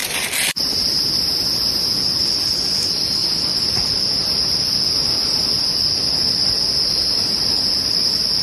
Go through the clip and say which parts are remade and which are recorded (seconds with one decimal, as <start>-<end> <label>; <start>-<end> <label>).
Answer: 0.0-0.9 remade; 0.9-3.2 recorded; 3.2-4.0 remade; 4.0-8.4 recorded